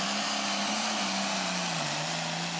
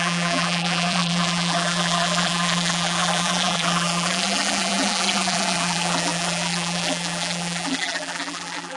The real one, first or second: first